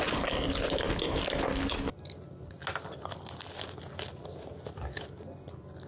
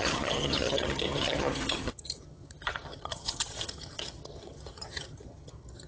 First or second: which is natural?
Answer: first